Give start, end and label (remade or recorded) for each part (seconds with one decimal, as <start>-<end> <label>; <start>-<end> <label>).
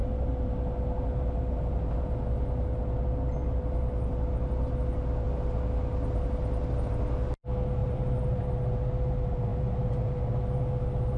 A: 0.0-7.8 recorded; 7.8-8.4 remade; 8.4-9.5 recorded; 9.5-10.3 remade; 10.3-11.2 recorded